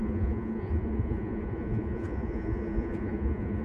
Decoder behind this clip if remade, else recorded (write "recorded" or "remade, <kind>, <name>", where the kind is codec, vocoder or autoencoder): remade, vocoder, Vocos